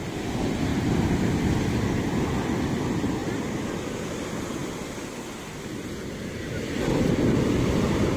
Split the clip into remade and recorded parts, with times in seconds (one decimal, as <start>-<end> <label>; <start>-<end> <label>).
0.0-0.7 remade; 0.7-1.3 recorded; 1.3-3.2 remade; 3.2-4.1 recorded; 4.1-4.6 remade; 4.6-5.9 recorded; 5.9-8.2 remade